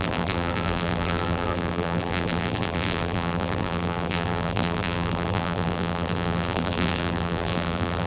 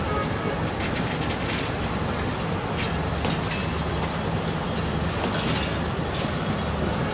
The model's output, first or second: first